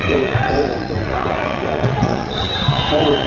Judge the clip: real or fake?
fake